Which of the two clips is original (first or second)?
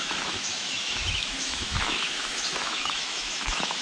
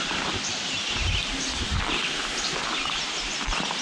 second